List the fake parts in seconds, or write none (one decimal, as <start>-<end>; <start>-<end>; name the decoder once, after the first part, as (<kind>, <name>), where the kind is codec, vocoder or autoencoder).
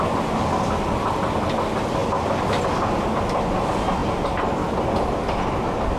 none